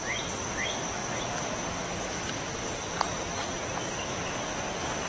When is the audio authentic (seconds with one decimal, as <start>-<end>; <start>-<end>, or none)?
0.0-5.1